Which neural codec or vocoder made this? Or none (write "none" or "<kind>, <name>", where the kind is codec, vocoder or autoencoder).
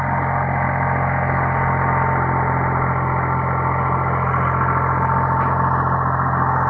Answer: none